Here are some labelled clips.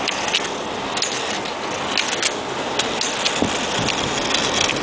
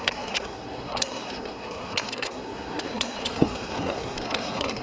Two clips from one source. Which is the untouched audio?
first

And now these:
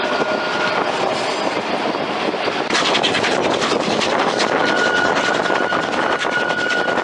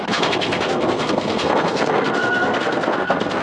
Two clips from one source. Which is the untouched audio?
first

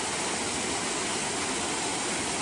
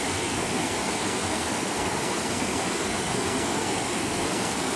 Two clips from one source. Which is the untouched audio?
first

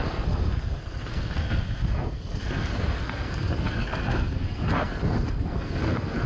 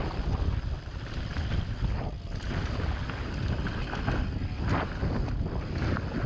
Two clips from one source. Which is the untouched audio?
second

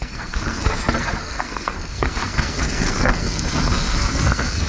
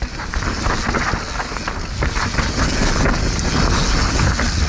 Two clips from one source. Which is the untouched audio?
second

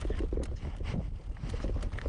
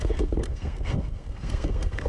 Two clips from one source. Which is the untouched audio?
first